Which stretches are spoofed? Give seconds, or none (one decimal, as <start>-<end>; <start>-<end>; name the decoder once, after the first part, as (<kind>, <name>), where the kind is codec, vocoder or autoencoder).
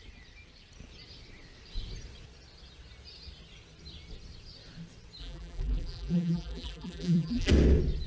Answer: 5.2-7.5 (vocoder, BigVGAN v2)